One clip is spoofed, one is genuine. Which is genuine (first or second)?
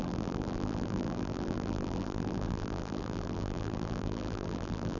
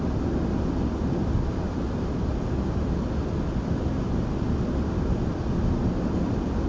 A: second